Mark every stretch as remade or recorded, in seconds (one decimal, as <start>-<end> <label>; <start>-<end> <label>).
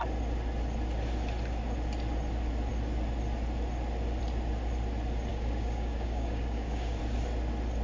0.0-5.3 recorded; 5.3-7.0 remade; 7.0-7.8 recorded